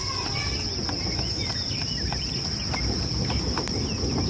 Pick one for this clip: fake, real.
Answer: real